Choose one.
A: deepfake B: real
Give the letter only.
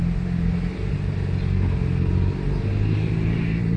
B